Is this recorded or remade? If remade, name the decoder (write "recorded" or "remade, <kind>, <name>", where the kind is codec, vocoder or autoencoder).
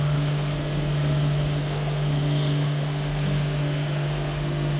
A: remade, codec, SNAC